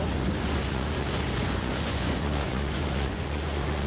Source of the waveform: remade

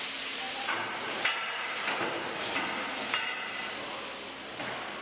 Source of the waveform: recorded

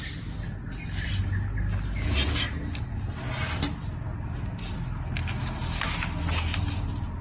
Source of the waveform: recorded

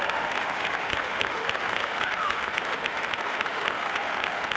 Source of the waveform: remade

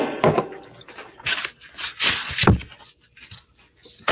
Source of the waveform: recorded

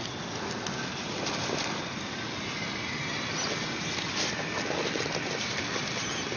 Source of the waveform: recorded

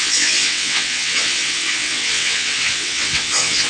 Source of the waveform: remade